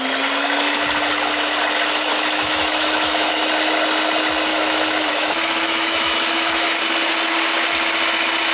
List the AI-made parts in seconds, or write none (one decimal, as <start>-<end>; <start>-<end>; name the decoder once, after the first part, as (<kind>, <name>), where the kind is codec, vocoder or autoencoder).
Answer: 2.1-3.3 (autoencoder, DAC-VAE); 4.5-6.8

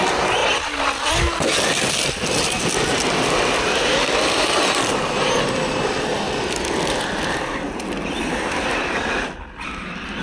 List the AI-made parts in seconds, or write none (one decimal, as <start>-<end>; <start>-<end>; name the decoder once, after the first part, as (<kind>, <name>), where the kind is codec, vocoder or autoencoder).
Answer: none

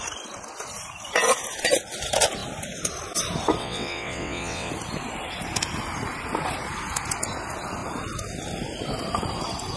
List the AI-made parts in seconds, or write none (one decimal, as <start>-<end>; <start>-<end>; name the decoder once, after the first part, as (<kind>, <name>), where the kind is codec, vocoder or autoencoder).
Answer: 3.6-4.7 (vocoder, WaveNeXt)

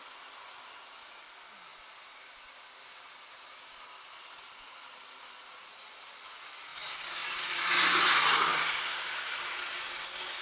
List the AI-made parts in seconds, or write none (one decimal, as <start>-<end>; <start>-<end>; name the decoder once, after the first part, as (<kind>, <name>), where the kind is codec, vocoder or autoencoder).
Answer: 1.7-5.2 (vocoder, BigVGAN v2); 6.7-7.6; 8.5-9.4